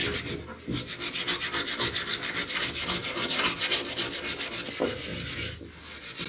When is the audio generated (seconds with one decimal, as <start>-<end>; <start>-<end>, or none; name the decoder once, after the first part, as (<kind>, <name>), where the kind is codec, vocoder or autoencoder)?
none